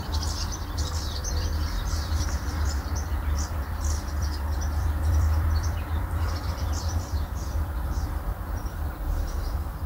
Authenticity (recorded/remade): remade